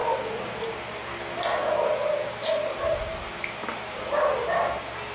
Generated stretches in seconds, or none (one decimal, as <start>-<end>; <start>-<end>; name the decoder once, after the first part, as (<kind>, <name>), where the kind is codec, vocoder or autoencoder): none